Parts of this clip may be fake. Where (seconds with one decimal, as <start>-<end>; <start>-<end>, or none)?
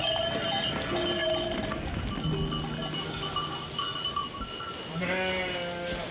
none